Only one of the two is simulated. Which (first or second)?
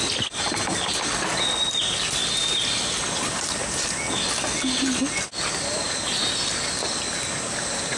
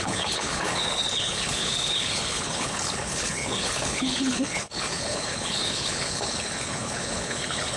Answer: second